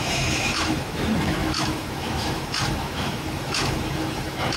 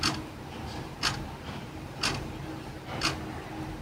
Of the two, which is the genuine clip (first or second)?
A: second